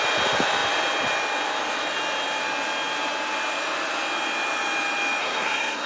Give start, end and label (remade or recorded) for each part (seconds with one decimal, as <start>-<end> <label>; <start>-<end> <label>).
0.0-5.2 recorded; 5.2-5.9 remade